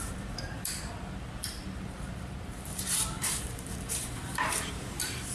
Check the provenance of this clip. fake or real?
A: fake